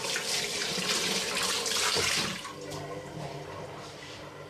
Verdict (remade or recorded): remade